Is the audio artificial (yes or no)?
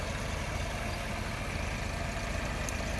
no